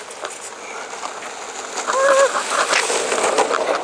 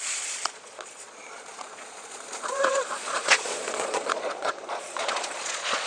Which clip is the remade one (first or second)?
second